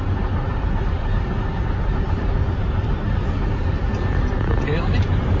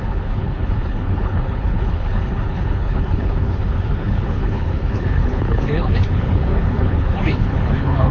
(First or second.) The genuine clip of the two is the first